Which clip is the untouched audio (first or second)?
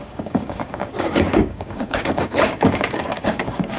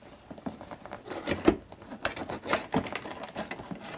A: second